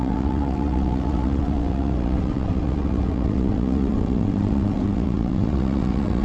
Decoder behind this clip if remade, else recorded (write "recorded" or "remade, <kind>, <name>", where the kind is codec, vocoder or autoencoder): remade, vocoder, WaveNeXt